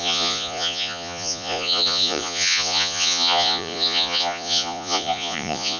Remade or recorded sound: remade